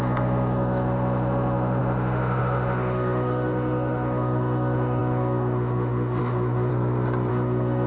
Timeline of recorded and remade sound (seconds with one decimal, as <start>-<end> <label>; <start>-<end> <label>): 0.0-6.7 remade; 6.7-7.3 recorded; 7.3-7.9 remade